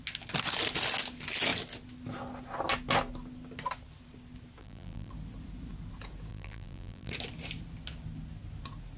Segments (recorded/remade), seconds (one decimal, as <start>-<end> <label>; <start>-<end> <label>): 0.0-4.6 recorded; 4.6-5.1 remade; 5.1-6.3 recorded; 6.3-7.1 remade; 7.1-9.0 recorded